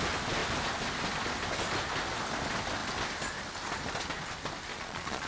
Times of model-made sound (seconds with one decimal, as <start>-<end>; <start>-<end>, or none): 4.7-5.3